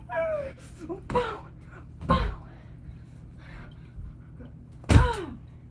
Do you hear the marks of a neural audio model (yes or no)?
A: no